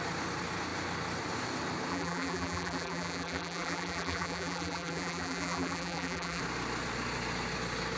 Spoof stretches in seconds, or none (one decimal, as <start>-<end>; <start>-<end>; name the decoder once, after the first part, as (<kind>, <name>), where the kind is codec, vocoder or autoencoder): 1.9-6.4 (vocoder, BigVGAN v2)